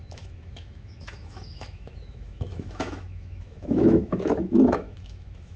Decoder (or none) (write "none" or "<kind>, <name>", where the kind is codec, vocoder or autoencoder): autoencoder, DAC-VAE